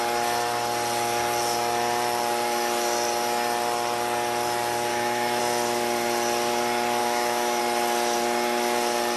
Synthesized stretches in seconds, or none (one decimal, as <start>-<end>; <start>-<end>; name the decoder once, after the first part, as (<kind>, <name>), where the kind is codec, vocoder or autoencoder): 4.9-5.4 (autoencoder, DAC-VAE); 7.0-7.6